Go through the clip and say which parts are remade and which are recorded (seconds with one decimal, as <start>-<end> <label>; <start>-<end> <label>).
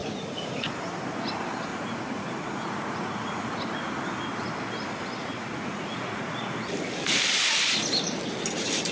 0.0-0.5 remade; 0.5-1.7 recorded; 1.7-4.0 remade; 4.0-5.2 recorded; 5.2-6.4 remade; 6.4-8.9 recorded